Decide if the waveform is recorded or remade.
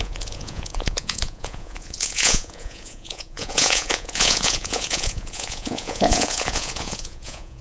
remade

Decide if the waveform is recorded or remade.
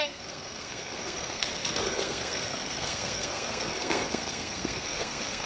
remade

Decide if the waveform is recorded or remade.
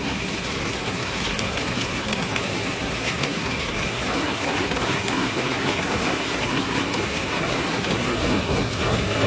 remade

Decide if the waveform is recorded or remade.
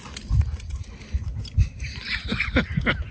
recorded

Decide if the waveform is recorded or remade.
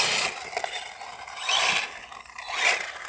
recorded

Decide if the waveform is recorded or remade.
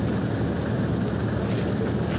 recorded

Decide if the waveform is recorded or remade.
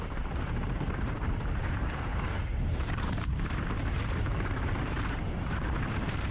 remade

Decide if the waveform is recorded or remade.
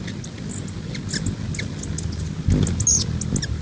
recorded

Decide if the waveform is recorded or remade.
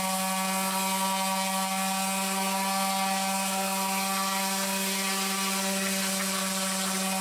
recorded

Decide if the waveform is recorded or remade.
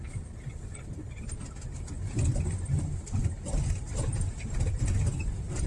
recorded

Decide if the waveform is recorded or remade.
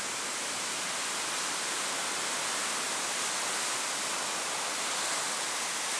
recorded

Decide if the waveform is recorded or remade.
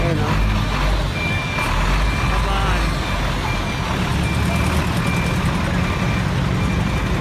recorded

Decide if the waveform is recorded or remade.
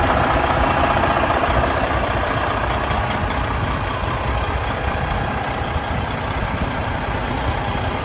remade